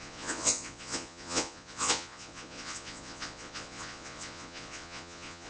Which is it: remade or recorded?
remade